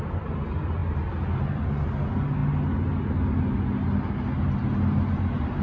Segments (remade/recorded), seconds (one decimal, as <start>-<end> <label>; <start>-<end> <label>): 0.0-5.6 recorded